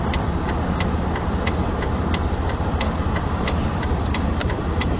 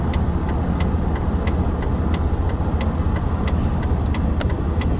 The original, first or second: second